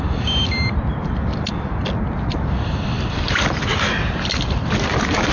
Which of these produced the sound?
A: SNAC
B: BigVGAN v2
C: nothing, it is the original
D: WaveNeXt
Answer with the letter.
C